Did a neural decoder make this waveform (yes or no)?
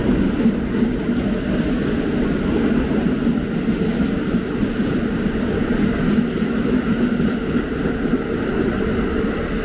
no